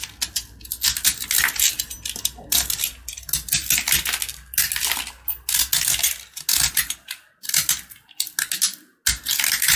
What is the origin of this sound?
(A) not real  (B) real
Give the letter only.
B